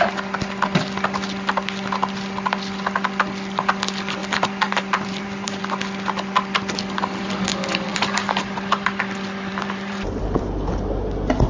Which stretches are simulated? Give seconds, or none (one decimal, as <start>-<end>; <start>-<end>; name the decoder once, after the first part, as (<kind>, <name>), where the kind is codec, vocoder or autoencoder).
4.2-5.6 (vocoder, BigVGAN v2); 7.9-9.0; 9.5-10.2